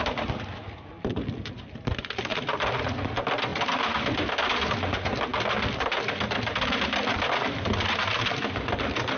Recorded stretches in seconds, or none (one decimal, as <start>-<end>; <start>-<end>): 0.0-9.2